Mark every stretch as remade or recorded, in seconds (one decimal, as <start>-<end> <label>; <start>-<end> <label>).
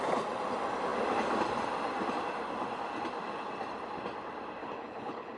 0.0-4.6 recorded; 4.6-5.4 remade